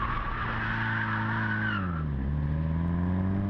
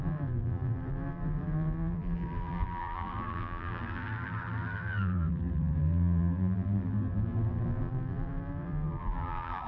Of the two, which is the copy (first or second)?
second